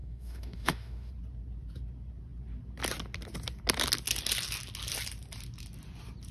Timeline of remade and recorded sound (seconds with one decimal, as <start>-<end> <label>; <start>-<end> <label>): 0.0-1.1 remade; 1.1-6.3 recorded